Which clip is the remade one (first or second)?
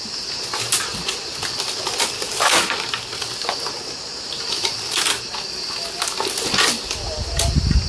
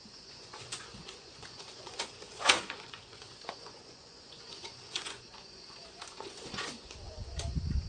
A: second